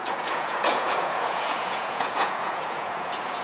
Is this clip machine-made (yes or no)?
yes